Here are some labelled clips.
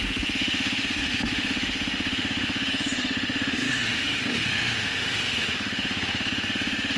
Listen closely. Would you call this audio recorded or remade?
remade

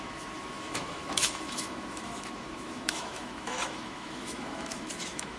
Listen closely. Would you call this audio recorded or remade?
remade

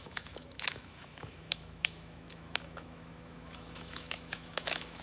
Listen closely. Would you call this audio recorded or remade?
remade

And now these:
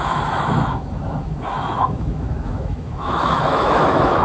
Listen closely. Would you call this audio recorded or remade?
remade